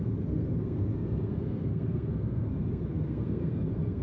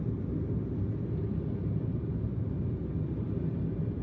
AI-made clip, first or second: first